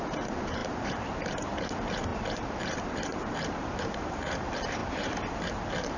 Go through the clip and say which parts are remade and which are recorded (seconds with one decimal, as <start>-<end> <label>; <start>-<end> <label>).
0.0-6.0 remade